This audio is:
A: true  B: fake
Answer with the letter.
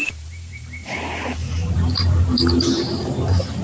B